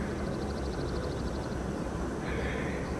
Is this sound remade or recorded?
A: recorded